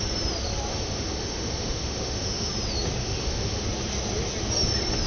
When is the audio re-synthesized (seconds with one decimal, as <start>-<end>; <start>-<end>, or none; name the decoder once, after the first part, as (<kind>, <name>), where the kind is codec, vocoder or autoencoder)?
0.7-2.5 (autoencoder, DAC-VAE); 3.0-3.6